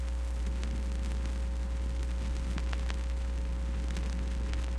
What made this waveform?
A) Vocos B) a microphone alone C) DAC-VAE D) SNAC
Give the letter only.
B